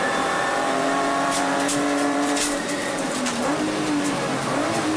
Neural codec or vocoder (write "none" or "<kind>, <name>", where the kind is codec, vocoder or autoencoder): vocoder, BigVGAN v2